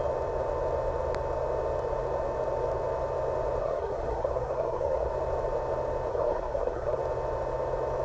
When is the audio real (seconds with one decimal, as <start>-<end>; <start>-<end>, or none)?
0.0-3.6; 5.1-6.1; 7.0-8.0